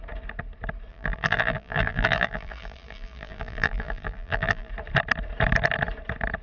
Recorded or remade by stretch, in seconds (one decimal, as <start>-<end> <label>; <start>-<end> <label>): 0.0-0.9 recorded; 0.9-4.7 remade; 4.7-6.4 recorded